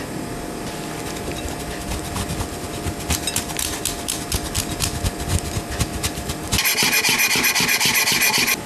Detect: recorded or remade recorded